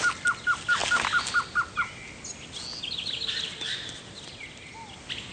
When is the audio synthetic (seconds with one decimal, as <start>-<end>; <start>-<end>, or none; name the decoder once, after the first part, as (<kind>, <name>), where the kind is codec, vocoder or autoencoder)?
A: none